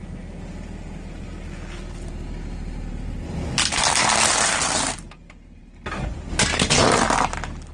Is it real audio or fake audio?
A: real